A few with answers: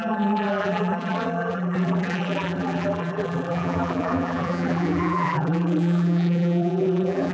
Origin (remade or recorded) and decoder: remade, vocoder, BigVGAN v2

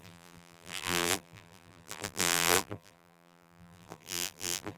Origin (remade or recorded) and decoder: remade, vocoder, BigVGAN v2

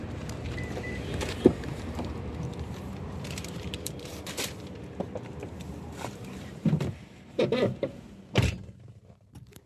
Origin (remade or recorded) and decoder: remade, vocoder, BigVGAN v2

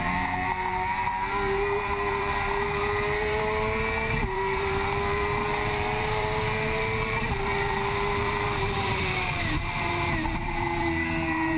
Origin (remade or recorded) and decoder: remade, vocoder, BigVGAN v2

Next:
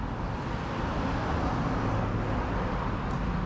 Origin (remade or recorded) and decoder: recorded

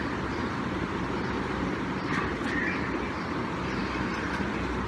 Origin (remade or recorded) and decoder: remade, vocoder, BigVGAN v2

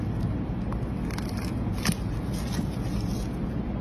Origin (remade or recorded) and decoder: recorded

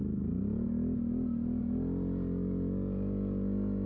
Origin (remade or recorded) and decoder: recorded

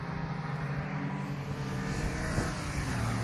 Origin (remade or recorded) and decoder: recorded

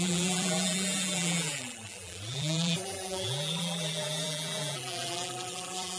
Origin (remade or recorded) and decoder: remade, vocoder, BigVGAN v2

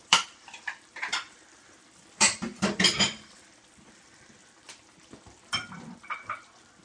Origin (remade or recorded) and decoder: remade, vocoder, BigVGAN v2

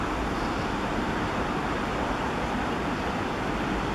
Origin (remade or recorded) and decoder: recorded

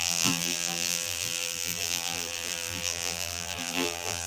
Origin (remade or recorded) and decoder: remade, vocoder, BigVGAN v2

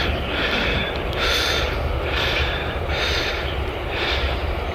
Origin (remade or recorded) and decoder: remade, vocoder, BigVGAN v2